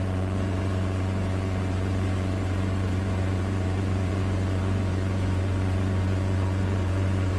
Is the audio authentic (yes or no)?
no